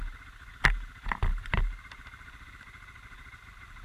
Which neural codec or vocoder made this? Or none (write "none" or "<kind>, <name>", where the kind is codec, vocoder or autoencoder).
none